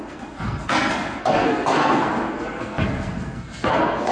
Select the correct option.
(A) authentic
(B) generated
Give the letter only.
B